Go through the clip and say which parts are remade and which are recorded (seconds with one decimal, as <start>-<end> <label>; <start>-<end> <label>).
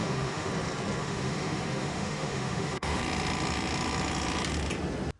0.0-0.5 remade; 0.5-1.0 recorded; 1.0-3.0 remade; 3.0-5.2 recorded